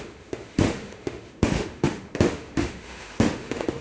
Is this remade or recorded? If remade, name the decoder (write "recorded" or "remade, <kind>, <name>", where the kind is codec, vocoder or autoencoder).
remade, autoencoder, DAC-VAE